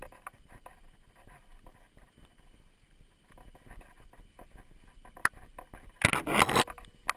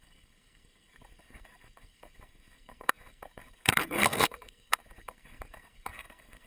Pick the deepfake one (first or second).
second